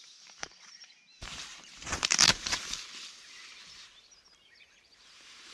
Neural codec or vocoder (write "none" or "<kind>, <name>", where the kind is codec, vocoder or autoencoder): vocoder, BigVGAN v2